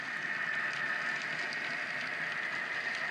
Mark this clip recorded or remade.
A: recorded